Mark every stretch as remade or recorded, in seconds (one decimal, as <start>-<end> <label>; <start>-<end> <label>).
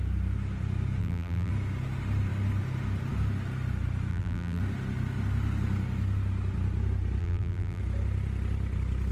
0.0-1.0 recorded; 1.0-1.5 remade; 1.5-4.1 recorded; 4.1-4.6 remade; 4.6-7.2 recorded; 7.2-7.8 remade; 7.8-9.1 recorded